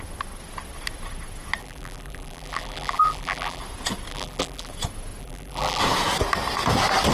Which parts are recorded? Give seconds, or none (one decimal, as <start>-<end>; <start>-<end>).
0.0-1.6; 3.6-4.1; 4.7-5.2; 5.8-7.1